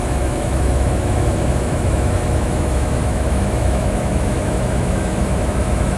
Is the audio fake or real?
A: fake